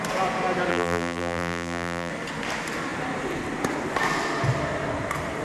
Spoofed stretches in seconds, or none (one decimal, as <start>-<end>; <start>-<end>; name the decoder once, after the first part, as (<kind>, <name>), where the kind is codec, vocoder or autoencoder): 0.7-2.1 (vocoder, BigVGAN v2)

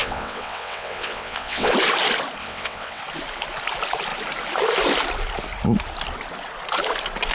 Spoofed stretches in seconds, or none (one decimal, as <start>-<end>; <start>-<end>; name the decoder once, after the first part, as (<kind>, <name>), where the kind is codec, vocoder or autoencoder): 0.0-1.7 (vocoder, WaveNeXt); 2.4-3.0

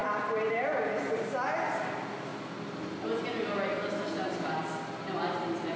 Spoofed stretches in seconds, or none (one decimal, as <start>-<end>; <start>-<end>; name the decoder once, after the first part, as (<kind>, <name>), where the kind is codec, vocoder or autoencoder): none

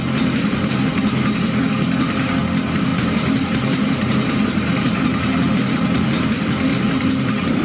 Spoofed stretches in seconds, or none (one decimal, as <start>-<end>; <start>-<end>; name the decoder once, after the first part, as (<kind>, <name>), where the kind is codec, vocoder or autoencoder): 2.9-5.5 (vocoder, BigVGAN v2); 6.7-7.6

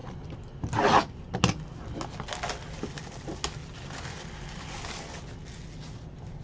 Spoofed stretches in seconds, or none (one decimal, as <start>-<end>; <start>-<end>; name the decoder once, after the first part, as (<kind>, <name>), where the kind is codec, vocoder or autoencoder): none

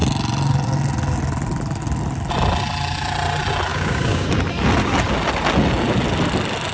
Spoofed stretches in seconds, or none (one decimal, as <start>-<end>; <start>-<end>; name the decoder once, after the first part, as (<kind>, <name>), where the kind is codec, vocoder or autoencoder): 3.7-4.3 (codec, DAC)